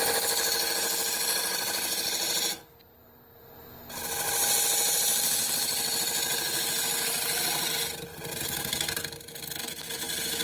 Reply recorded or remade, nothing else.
recorded